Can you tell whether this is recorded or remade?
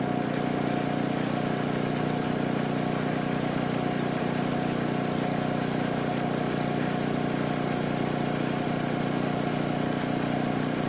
recorded